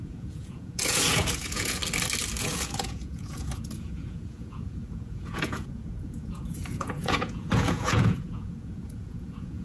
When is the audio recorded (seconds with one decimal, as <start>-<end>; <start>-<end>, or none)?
1.8-2.4